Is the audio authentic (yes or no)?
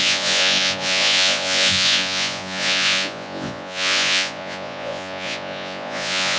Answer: no